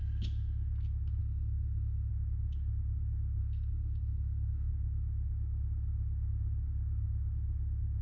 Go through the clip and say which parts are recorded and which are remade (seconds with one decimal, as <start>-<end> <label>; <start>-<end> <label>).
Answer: 0.0-1.2 recorded; 1.2-2.1 remade; 2.1-3.4 recorded; 3.4-4.7 remade; 4.7-8.0 recorded